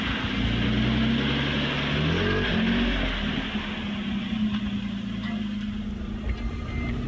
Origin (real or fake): real